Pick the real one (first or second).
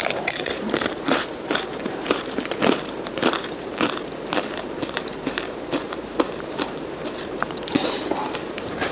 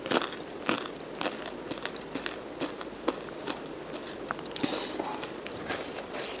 second